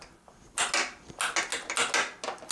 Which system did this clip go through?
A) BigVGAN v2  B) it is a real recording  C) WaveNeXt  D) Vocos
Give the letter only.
B